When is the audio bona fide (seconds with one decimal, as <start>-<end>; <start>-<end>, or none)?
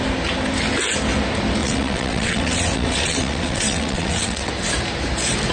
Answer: 0.0-1.6; 4.5-5.5